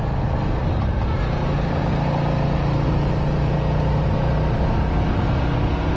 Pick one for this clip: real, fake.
real